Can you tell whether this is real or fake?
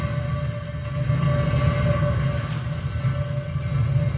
real